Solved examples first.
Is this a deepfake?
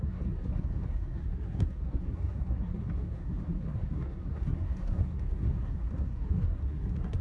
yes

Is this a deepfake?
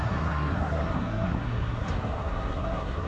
yes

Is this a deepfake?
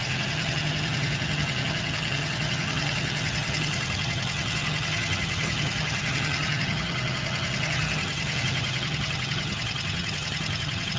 yes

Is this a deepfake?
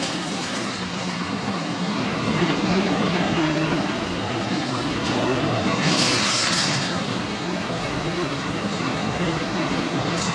yes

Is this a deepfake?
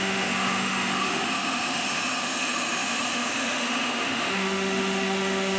yes